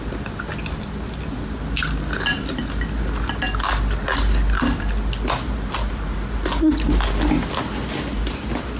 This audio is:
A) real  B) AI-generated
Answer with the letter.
A